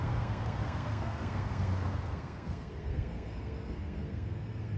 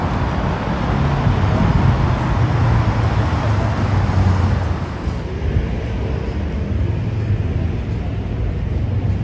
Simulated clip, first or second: first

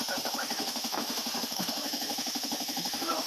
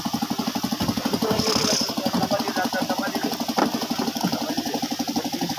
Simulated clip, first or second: first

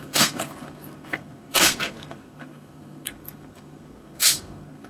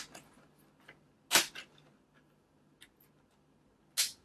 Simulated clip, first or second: first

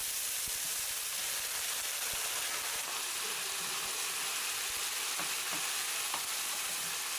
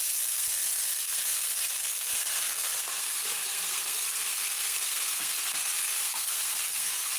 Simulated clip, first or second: second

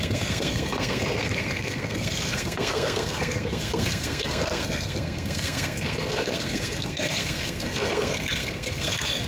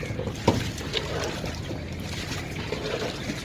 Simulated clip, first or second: first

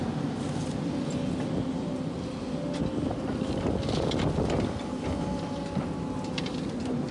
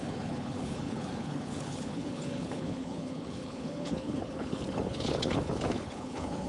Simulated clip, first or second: second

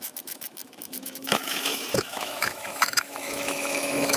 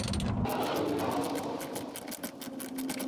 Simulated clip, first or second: first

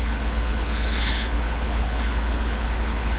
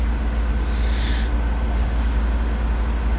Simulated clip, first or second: first